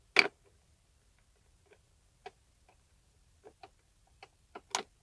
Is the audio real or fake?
real